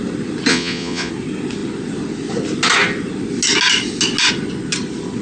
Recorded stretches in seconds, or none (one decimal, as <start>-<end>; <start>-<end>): 0.0-0.5; 1.1-5.2